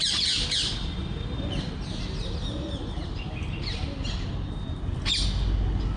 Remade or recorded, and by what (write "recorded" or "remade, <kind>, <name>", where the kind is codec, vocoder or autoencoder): recorded